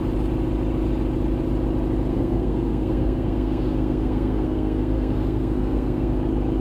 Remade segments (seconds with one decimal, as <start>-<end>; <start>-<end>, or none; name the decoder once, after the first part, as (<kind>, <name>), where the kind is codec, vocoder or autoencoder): 2.1-6.1 (codec, SNAC)